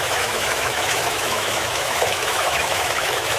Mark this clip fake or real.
fake